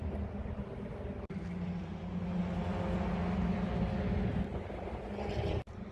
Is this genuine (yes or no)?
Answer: yes